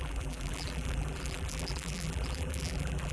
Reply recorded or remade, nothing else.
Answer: remade